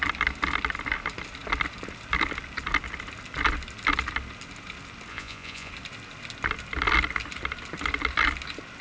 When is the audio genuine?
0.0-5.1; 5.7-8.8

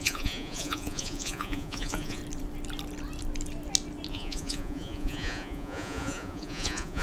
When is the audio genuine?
2.2-4.1

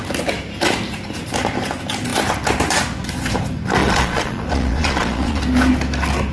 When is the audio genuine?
0.0-3.8; 5.4-6.3